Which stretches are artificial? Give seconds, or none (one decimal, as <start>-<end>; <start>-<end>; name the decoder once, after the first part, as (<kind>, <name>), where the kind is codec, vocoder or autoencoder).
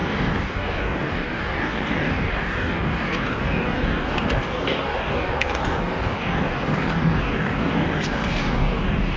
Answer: 0.0-9.2 (codec, DAC)